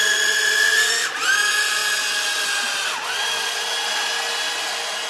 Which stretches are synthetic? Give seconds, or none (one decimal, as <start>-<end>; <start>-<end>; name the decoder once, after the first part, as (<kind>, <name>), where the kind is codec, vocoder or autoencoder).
none